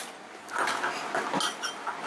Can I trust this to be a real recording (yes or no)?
yes